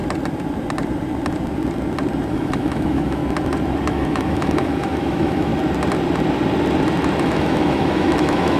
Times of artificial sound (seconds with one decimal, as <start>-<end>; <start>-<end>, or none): 2.3-3.2; 3.9-5.5; 7.2-8.6